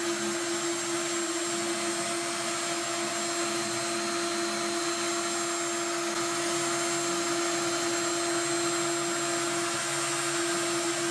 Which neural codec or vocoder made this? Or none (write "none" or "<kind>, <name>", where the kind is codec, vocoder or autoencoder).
none